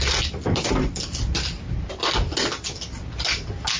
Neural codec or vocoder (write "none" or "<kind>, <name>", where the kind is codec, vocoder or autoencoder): none